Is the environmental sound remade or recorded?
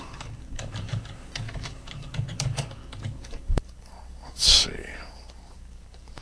remade